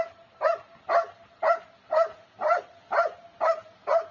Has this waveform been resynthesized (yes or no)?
no